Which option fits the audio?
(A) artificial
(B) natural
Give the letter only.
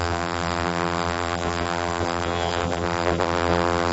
A